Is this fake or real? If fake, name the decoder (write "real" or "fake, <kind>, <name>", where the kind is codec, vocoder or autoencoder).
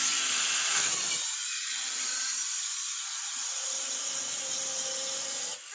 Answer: real